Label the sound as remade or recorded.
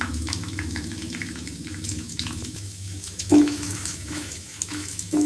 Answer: remade